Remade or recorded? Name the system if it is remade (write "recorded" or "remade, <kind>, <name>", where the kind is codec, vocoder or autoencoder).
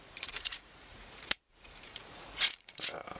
remade, vocoder, Vocos